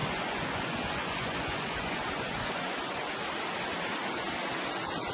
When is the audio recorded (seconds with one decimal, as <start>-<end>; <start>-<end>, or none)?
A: 3.1-5.1